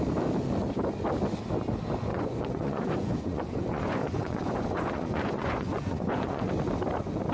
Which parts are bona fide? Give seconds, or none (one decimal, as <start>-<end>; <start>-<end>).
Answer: 0.0-2.1; 6.5-7.3